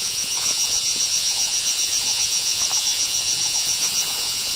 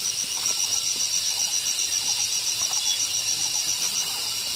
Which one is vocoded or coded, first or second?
first